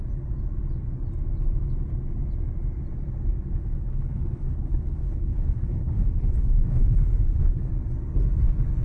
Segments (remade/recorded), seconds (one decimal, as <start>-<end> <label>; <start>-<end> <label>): 0.0-3.6 recorded; 3.6-7.7 remade; 7.7-8.8 recorded